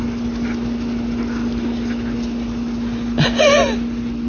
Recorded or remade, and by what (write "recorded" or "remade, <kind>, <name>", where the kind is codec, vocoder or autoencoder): recorded